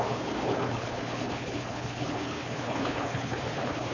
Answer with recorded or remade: remade